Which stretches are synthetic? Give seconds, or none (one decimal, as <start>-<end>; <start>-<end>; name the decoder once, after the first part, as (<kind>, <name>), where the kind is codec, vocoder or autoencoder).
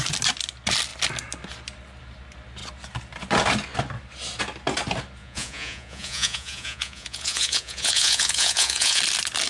5.2-9.0 (vocoder, Vocos)